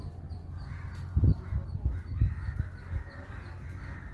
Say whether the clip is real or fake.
real